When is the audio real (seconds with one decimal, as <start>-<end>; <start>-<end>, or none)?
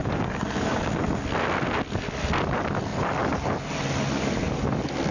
1.2-5.1